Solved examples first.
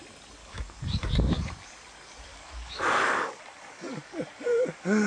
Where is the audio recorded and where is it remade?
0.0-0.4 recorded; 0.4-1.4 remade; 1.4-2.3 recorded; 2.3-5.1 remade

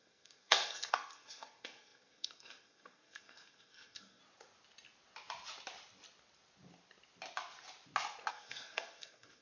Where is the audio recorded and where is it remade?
0.0-4.2 remade; 4.2-8.3 recorded; 8.3-9.4 remade

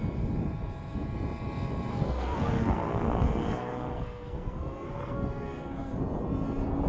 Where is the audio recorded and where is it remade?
0.0-1.9 recorded; 1.9-6.0 remade; 6.0-6.9 recorded